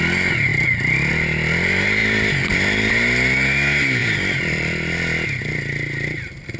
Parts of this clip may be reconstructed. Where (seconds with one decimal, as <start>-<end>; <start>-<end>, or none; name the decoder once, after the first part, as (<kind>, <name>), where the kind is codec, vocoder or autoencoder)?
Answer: 0.5-1.1 (vocoder, BigVGAN v2); 2.0-2.9; 4.0-4.7

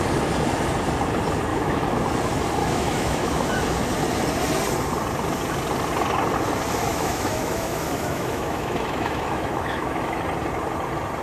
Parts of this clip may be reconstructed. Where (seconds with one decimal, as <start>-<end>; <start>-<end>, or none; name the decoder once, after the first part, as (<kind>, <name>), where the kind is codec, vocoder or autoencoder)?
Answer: 1.5-2.0 (autoencoder, DAC-VAE); 2.6-3.6; 6.9-10.2

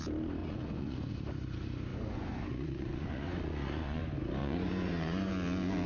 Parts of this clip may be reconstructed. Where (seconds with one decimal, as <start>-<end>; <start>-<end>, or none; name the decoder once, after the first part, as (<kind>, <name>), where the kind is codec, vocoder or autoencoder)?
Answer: 0.4-1.1 (vocoder, Vocos); 1.9-4.0; 4.4-5.3

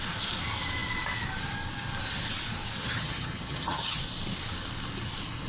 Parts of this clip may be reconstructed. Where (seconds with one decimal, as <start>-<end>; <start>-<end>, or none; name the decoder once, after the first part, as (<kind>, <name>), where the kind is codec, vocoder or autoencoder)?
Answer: 2.8-4.0 (vocoder, HiFi-GAN)

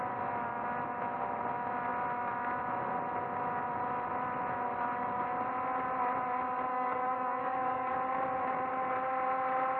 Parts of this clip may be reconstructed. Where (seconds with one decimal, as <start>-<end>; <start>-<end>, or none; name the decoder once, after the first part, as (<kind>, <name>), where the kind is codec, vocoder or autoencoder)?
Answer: 6.7-7.9 (codec, DAC)

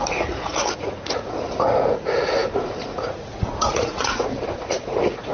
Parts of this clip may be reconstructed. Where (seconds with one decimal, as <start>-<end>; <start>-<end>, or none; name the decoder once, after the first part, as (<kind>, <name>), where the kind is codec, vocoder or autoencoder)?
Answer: 0.0-5.3 (vocoder, Vocos)

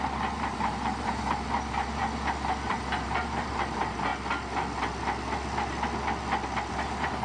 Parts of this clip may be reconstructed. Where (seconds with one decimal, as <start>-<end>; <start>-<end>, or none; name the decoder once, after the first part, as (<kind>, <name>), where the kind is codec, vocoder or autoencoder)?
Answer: 0.0-2.0 (vocoder, BigVGAN v2); 2.7-4.1; 6.7-7.2

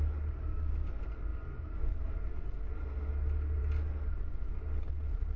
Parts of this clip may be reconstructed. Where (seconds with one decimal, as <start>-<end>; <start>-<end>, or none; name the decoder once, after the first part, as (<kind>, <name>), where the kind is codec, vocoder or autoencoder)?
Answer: none